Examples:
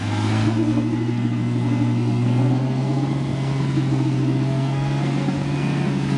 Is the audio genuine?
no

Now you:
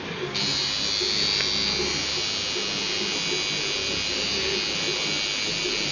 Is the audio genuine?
yes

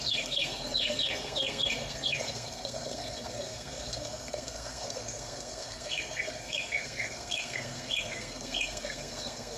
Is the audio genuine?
no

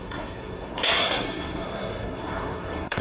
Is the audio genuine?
no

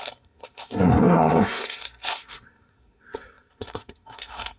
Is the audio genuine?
no